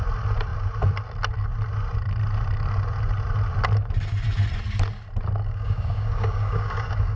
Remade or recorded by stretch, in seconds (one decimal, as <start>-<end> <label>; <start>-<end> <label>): 0.0-5.4 recorded; 5.4-7.2 remade